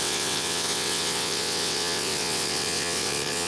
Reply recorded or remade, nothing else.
remade